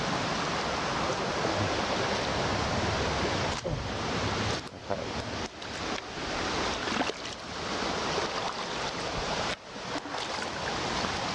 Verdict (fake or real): real